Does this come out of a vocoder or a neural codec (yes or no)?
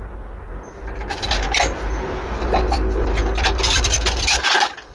no